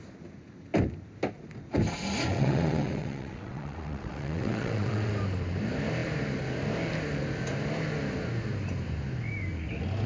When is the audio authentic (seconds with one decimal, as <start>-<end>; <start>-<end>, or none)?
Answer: 0.0-2.3; 5.1-10.1